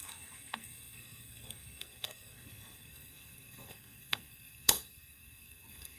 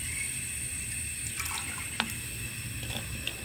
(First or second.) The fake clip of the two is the first